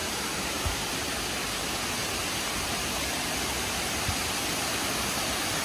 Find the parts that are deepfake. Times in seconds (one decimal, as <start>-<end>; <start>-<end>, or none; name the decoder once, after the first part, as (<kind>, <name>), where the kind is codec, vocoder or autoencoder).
0.0-0.6 (vocoder, BigVGAN v2)